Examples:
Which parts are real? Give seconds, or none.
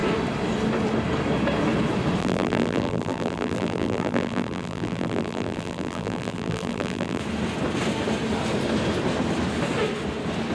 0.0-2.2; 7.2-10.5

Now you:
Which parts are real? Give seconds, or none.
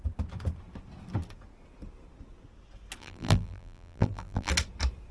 0.0-3.0; 4.5-5.1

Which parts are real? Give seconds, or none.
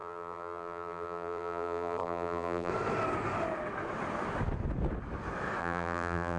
2.7-5.6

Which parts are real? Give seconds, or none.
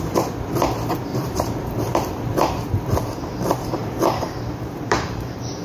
0.0-1.1; 1.8-3.8